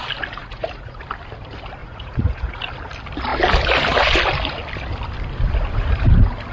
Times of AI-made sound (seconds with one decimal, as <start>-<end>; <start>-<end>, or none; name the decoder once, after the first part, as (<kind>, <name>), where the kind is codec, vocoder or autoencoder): 0.4-1.0 (vocoder, Vocos); 1.8-2.6